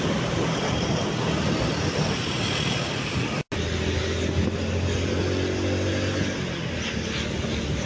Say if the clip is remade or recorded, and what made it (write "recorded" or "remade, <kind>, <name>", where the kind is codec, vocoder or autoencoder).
recorded